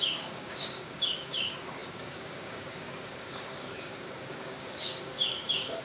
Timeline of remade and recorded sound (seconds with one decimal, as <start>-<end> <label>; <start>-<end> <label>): 0.0-5.8 remade